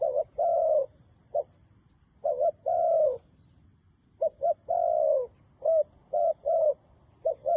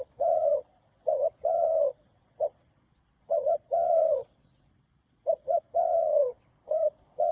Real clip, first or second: first